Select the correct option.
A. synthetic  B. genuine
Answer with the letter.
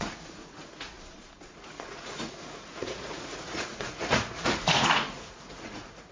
A